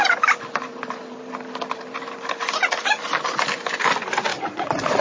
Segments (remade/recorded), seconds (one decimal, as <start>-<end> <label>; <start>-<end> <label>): 0.0-4.3 recorded; 4.3-5.0 remade